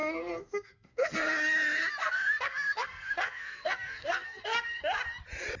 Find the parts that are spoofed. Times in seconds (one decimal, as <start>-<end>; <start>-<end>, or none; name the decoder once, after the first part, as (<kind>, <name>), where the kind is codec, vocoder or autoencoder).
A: 0.0-1.2 (codec, SNAC); 2.0-4.8